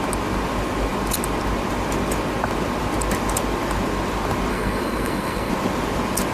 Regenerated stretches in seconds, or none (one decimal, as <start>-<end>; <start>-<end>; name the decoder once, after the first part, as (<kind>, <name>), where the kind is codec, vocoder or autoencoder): 4.5-5.5 (codec, SNAC)